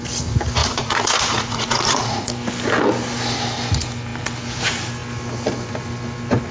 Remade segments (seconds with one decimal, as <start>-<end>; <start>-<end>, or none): 0.6-2.3